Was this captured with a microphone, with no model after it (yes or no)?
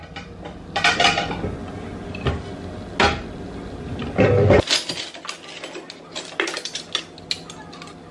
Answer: yes